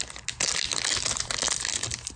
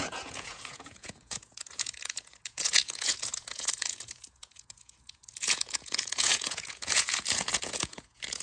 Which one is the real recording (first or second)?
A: first